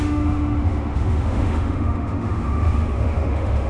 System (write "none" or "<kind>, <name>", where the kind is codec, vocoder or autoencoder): autoencoder, DAC-VAE